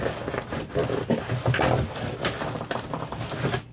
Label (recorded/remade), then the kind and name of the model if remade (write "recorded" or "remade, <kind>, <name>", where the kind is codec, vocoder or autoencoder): recorded